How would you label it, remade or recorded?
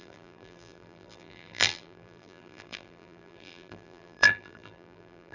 remade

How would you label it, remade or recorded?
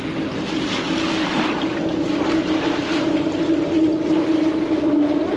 recorded